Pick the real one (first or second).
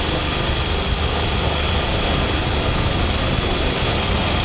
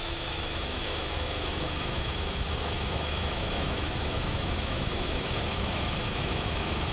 first